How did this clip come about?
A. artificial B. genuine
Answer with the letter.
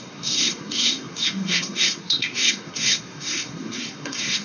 A